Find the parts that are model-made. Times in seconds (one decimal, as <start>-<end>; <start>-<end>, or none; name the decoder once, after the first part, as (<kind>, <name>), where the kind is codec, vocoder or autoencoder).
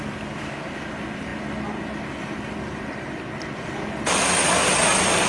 none